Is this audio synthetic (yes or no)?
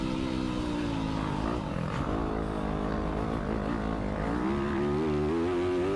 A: no